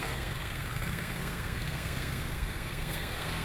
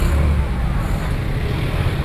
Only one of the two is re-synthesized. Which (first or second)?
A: first